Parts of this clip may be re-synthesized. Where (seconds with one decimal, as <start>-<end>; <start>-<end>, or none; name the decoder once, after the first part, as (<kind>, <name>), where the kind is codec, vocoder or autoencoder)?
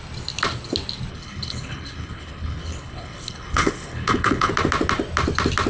1.1-4.5 (codec, HILCodec)